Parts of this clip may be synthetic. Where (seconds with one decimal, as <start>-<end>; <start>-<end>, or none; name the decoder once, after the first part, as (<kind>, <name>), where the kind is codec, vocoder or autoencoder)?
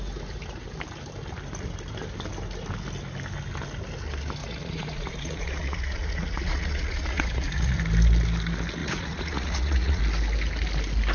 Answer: 4.4-7.8 (vocoder, Vocos); 8.8-10.0